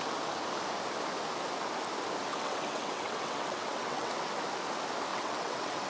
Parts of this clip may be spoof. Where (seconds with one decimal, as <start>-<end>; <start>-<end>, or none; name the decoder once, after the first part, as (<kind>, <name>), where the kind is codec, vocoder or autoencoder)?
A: 2.3-4.1 (vocoder, WaveNeXt); 5.1-5.9